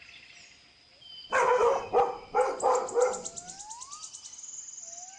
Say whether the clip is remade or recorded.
recorded